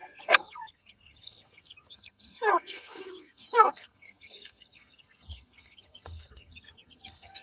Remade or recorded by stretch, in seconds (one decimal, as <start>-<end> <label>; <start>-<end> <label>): 0.0-7.4 remade